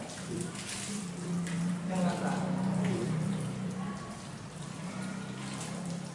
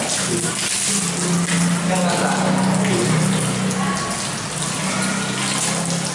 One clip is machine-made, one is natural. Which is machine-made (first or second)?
first